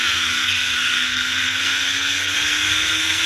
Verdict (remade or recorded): remade